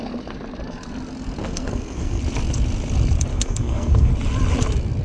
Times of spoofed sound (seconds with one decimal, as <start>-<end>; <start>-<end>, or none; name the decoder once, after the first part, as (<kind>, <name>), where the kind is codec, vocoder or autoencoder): 1.4-2.2 (codec, SNAC); 3.3-4.1